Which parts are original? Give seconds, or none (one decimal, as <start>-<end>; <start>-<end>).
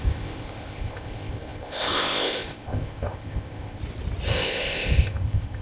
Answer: 3.8-4.3